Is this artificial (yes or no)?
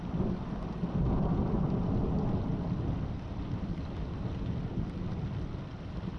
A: no